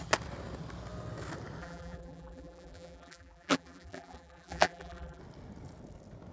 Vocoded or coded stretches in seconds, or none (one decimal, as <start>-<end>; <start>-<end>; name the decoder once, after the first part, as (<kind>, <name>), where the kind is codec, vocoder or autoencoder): 1.6-5.2 (vocoder, BigVGAN v2)

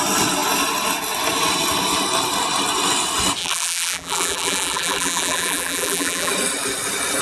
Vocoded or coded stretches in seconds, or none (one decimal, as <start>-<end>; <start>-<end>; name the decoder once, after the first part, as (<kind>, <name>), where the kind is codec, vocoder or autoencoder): 3.4-6.3 (vocoder, BigVGAN v2)

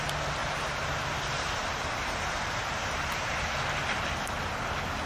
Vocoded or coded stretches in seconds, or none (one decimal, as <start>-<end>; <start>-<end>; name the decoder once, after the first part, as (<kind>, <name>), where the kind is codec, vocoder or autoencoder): 0.4-3.5 (vocoder, BigVGAN v2)

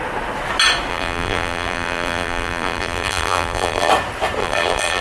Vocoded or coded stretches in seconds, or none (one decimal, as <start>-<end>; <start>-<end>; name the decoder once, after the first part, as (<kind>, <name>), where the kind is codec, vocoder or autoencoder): 0.9-3.9 (vocoder, BigVGAN v2); 4.4-5.0